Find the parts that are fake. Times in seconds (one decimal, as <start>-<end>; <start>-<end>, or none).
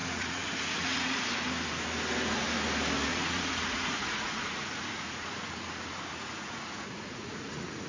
0.0-1.3; 3.1-7.9